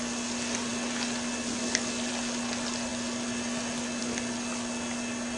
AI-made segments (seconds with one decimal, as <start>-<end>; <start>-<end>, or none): none